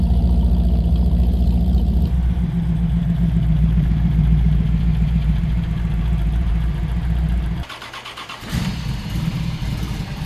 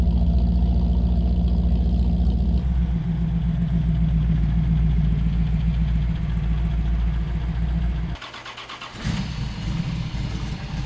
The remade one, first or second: first